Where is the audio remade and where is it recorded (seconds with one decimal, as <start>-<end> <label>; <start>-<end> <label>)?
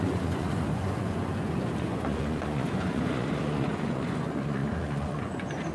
0.0-5.7 remade